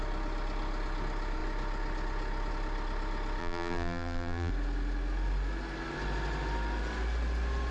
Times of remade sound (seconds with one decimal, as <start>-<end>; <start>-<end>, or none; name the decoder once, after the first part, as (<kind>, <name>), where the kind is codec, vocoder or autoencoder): 3.4-4.5 (vocoder, BigVGAN v2)